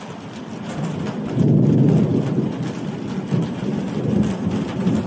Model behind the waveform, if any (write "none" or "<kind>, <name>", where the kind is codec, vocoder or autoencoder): none